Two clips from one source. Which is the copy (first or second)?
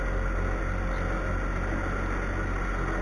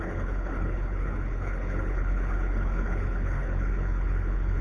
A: second